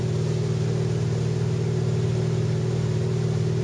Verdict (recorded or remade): recorded